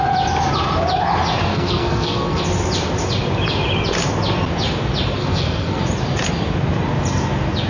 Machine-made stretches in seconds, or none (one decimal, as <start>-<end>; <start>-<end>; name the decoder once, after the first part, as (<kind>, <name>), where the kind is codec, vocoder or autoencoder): 1.5-2.4 (codec, SNAC); 5.2-5.8